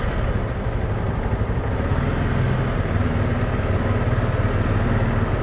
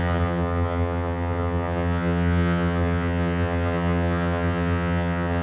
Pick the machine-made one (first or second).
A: second